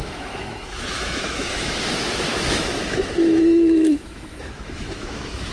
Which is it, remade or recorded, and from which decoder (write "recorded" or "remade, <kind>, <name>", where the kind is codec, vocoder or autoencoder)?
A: remade, autoencoder, DAC-VAE